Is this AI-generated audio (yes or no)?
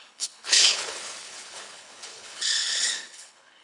yes